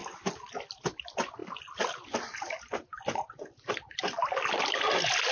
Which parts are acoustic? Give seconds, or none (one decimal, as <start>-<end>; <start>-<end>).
0.0-5.3